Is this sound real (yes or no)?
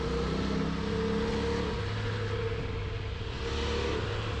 yes